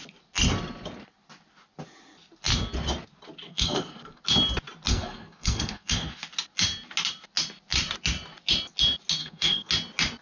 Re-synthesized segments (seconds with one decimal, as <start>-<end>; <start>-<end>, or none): 3.5-4.2; 4.9-6.2; 9.2-9.7